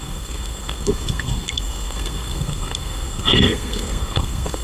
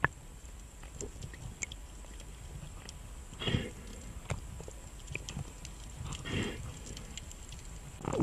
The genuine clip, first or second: second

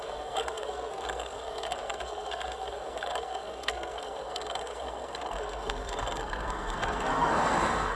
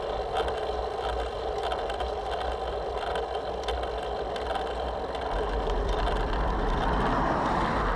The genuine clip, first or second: second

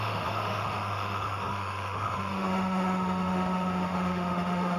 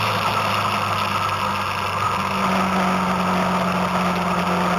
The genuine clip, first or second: second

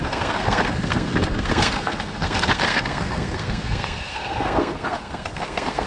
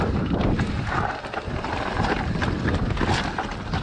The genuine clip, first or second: second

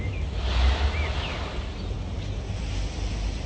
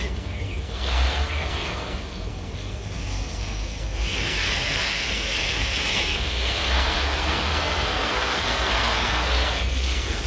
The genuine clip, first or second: first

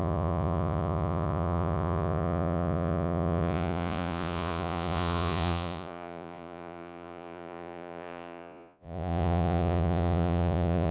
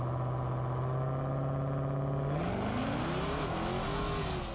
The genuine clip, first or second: second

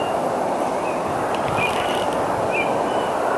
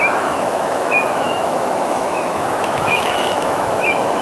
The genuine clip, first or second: first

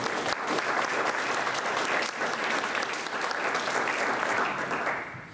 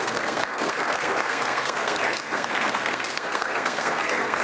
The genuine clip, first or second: first